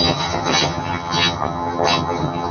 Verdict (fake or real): fake